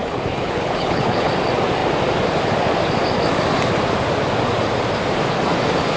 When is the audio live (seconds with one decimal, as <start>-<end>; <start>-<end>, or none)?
1.3-6.0